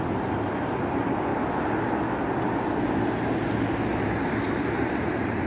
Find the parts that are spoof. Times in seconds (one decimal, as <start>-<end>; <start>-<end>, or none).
none